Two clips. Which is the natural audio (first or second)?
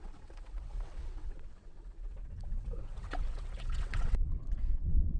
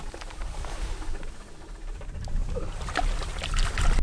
second